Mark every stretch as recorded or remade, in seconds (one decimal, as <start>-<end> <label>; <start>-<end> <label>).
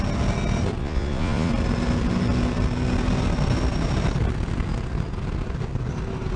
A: 0.0-0.8 recorded; 0.8-1.5 remade; 1.5-6.4 recorded